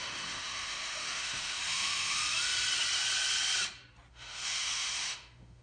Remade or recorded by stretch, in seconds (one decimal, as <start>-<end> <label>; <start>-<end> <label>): 0.0-2.2 remade; 2.2-4.1 recorded; 4.1-5.6 remade